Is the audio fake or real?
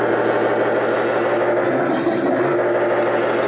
real